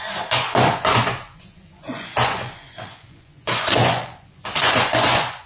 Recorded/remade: remade